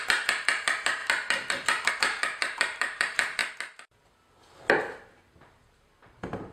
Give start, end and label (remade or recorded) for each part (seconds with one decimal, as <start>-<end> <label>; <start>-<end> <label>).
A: 0.0-1.0 remade; 1.0-1.9 recorded; 1.9-3.4 remade; 3.4-5.7 recorded; 5.7-6.5 remade